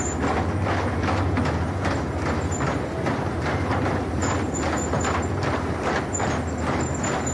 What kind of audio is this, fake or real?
real